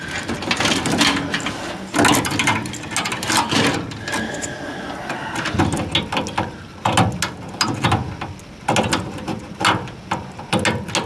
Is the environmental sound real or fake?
real